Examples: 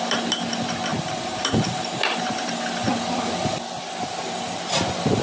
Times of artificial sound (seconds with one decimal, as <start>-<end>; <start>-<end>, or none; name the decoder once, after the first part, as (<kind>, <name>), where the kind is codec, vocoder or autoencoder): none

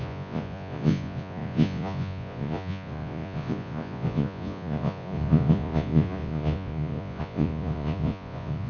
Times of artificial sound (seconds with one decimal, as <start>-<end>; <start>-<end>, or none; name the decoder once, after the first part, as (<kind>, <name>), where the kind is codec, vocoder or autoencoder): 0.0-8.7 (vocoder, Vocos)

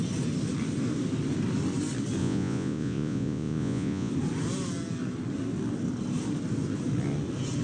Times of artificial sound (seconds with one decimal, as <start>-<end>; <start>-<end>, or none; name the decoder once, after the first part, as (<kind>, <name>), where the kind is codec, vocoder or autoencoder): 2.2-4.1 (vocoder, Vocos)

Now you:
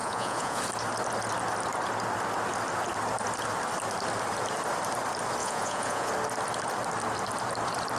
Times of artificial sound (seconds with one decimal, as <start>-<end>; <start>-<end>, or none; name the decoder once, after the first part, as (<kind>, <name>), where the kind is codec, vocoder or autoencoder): 0.0-0.6 (vocoder, Vocos); 5.4-6.1